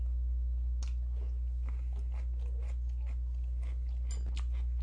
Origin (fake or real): real